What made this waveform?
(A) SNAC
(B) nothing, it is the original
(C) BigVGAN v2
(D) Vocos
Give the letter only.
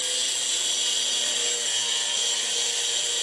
B